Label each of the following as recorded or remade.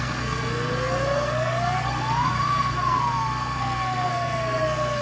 remade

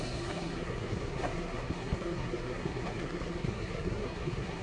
remade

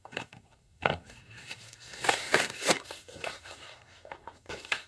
remade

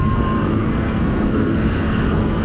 remade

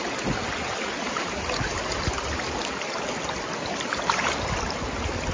recorded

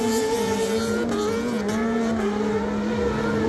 recorded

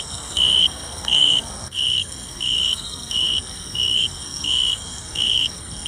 remade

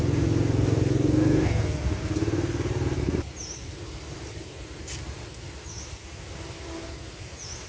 recorded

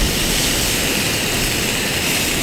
recorded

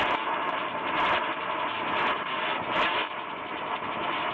recorded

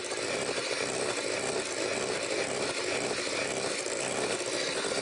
recorded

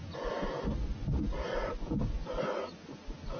recorded